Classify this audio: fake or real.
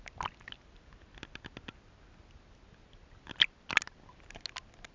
real